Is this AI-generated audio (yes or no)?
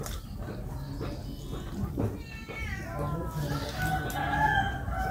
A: no